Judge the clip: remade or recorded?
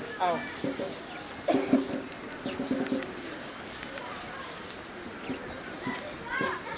recorded